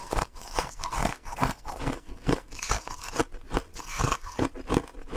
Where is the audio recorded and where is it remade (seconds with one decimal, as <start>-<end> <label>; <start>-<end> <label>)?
0.0-3.1 remade; 3.1-3.7 recorded; 3.7-4.5 remade; 4.5-5.2 recorded

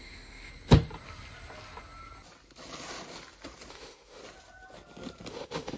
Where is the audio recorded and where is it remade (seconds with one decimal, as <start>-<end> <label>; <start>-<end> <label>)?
0.0-0.5 remade; 0.5-3.7 recorded; 3.7-4.2 remade; 4.2-5.3 recorded; 5.3-5.8 remade

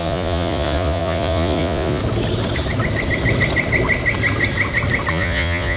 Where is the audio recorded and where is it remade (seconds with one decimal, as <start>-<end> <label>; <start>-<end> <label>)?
0.0-2.0 remade; 2.0-5.1 recorded; 5.1-5.8 remade

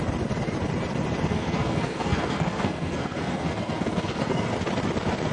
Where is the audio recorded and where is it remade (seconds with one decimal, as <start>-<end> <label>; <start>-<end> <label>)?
0.0-1.3 recorded; 1.3-4.5 remade; 4.5-5.3 recorded

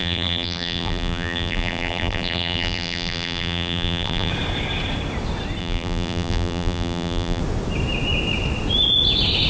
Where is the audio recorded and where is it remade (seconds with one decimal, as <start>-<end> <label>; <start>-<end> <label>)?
0.0-4.3 remade; 4.3-5.6 recorded; 5.6-7.4 remade; 7.4-9.5 recorded

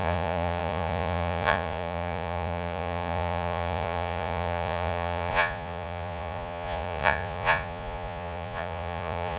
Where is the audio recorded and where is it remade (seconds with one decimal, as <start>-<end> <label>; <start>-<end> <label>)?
0.0-9.4 remade

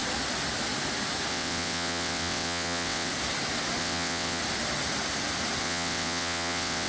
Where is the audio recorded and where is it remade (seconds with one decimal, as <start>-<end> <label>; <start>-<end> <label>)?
0.0-1.3 recorded; 1.3-3.1 remade; 3.1-3.8 recorded; 3.8-4.4 remade; 4.4-5.6 recorded; 5.6-6.9 remade

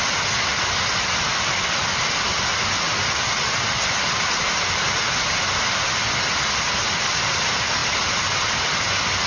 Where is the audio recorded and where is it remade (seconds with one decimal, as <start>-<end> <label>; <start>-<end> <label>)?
0.0-9.3 recorded